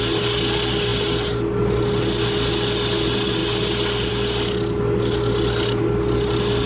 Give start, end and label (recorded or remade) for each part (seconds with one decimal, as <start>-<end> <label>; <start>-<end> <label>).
0.0-6.7 recorded